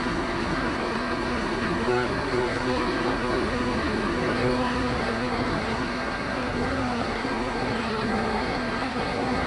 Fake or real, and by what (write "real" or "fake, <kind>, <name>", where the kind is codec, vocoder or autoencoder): fake, codec, SNAC